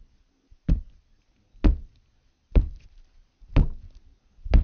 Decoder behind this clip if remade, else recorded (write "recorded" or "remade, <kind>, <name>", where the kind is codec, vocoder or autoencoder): recorded